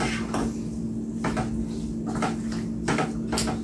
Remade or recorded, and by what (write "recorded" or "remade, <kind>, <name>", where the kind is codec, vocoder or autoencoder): recorded